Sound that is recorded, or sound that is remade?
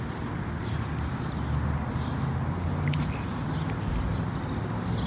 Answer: recorded